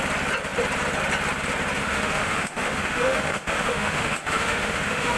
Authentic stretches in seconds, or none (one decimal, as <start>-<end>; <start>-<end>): 0.0-1.8